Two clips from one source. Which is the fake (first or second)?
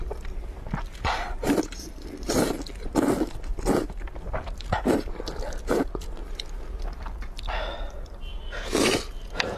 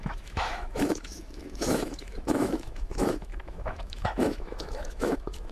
second